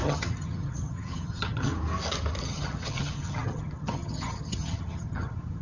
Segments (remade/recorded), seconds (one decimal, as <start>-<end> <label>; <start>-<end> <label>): 0.0-1.7 remade; 1.7-2.4 recorded; 2.4-5.6 remade